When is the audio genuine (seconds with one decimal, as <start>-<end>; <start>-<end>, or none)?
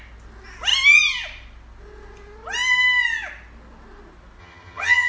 0.0-4.4